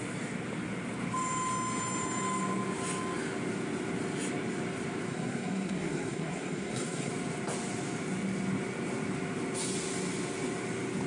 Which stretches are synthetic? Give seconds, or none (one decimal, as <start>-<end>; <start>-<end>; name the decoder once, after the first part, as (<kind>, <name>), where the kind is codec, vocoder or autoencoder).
5.1-7.1 (codec, SNAC)